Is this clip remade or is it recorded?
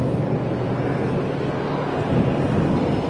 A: recorded